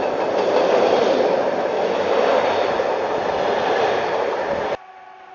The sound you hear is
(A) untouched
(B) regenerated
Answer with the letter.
A